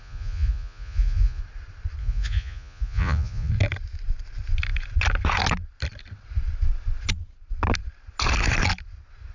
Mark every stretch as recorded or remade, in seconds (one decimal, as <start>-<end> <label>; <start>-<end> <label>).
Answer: 0.0-1.4 remade; 1.4-2.0 recorded; 2.0-3.5 remade; 3.5-9.3 recorded